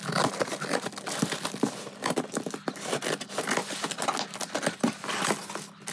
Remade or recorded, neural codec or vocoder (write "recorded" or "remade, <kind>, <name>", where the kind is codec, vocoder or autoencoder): recorded